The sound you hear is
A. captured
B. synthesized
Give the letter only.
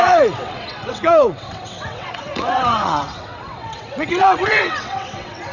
B